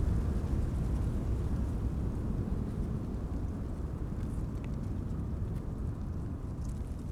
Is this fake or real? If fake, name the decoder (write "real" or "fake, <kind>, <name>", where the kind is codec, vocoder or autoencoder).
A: fake, vocoder, BigVGAN v2